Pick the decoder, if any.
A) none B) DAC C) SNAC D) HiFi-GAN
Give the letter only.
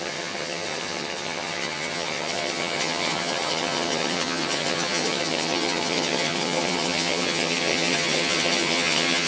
D